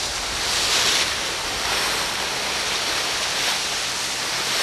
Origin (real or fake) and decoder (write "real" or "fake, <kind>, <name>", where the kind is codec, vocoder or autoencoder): real